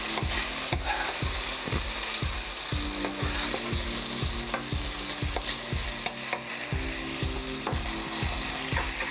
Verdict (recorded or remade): recorded